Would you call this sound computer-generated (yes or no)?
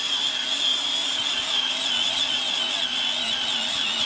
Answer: no